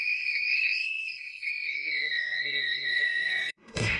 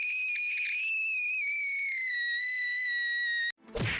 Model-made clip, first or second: first